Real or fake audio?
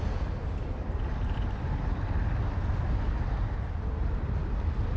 real